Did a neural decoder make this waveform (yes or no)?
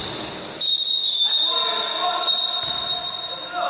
no